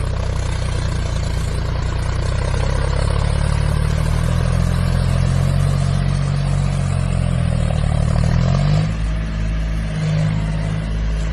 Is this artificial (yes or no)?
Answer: no